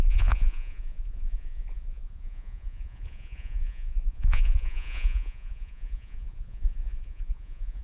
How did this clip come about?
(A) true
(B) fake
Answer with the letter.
B